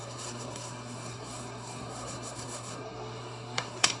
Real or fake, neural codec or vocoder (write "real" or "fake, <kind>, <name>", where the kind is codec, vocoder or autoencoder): fake, codec, SNAC